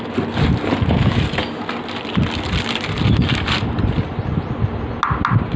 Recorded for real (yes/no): yes